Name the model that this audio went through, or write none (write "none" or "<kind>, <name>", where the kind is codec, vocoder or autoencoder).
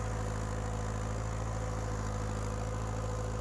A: none